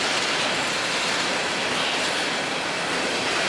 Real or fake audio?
real